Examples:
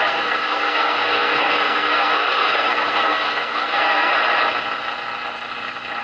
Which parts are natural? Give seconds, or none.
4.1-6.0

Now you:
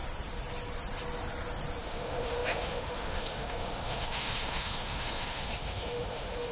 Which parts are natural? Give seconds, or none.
0.0-1.8

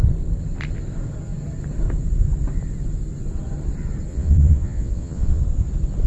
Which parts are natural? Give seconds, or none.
0.0-4.1; 5.4-6.1